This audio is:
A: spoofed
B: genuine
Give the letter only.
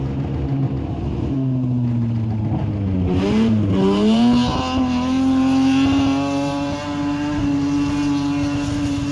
B